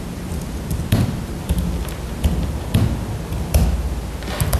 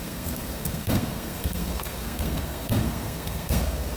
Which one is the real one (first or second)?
first